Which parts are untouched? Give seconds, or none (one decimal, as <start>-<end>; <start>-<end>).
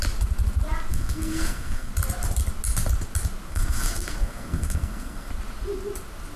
0.0-0.9; 1.9-3.5; 5.3-6.4